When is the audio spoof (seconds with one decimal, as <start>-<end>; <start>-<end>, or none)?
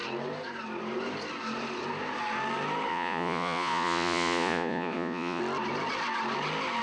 2.9-5.4